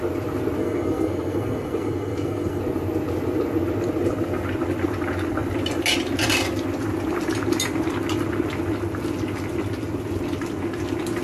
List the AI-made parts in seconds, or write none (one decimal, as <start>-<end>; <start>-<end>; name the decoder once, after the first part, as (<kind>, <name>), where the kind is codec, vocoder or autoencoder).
0.6-2.6 (codec, SNAC)